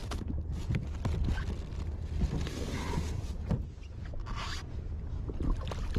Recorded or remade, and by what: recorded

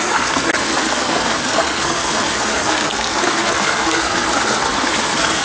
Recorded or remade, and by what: remade, codec, SNAC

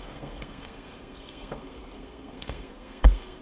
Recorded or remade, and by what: remade, codec, SNAC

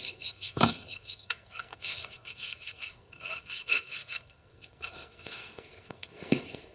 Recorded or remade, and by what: remade, codec, SNAC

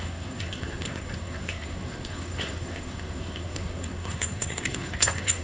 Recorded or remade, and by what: remade, codec, SNAC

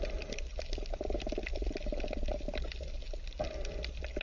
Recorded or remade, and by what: recorded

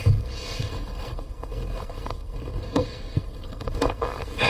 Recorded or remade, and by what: remade, codec, SNAC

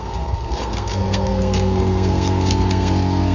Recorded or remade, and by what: remade, codec, SNAC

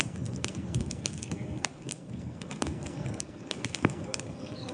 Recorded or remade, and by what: remade, codec, SNAC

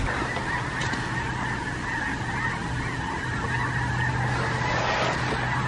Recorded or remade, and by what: recorded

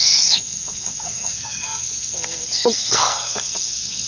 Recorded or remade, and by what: remade, codec, SNAC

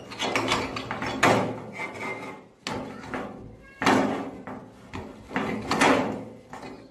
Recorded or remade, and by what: recorded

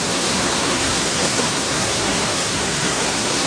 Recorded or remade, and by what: remade, codec, SNAC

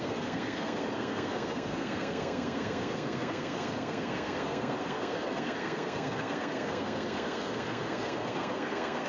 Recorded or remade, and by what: remade, codec, SNAC